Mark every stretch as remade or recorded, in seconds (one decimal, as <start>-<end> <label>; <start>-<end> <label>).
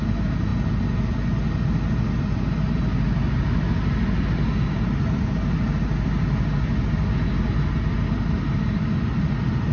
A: 0.0-9.7 recorded